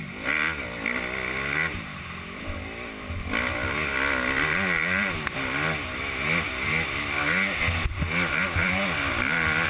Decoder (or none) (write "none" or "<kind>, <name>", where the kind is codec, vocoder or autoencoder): none